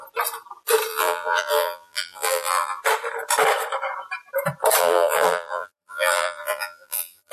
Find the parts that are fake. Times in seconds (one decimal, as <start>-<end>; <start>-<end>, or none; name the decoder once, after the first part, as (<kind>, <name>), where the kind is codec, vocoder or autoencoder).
0.9-2.8 (vocoder, BigVGAN v2); 4.8-7.3